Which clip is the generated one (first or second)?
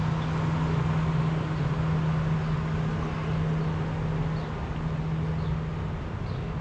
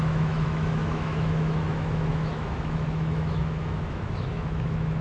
second